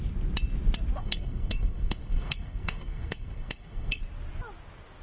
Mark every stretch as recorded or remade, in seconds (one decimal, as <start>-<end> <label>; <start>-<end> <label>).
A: 0.0-1.0 recorded; 1.0-4.0 remade; 4.0-5.0 recorded